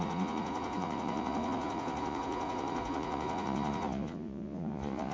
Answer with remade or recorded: remade